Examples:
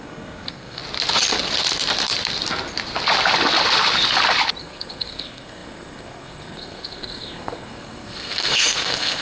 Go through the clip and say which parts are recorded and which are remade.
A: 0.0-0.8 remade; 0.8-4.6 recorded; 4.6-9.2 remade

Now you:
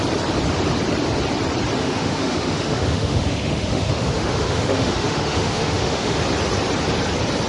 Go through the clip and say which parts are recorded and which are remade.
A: 0.0-1.8 recorded; 1.8-6.2 remade; 6.2-7.5 recorded

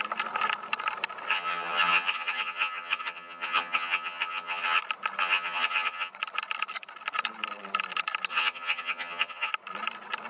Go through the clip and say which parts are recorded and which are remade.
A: 0.0-1.3 recorded; 1.3-4.8 remade; 4.8-5.2 recorded; 5.2-6.1 remade; 6.1-8.3 recorded; 8.3-9.5 remade; 9.5-10.3 recorded

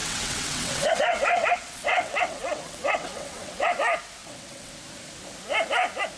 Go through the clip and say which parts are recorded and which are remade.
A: 0.0-3.7 remade; 3.7-4.2 recorded; 4.2-4.7 remade; 4.7-6.2 recorded

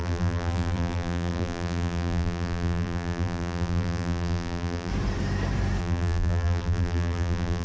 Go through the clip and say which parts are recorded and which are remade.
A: 0.0-4.9 remade; 4.9-5.8 recorded; 5.8-7.6 remade

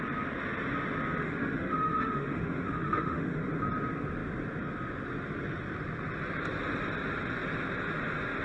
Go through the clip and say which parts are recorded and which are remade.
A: 0.0-1.2 recorded; 1.2-3.5 remade; 3.5-8.4 recorded